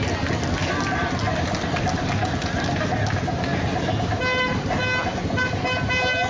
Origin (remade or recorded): recorded